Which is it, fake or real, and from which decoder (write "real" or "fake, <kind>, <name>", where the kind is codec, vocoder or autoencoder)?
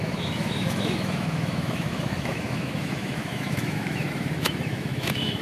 fake, autoencoder, DAC-VAE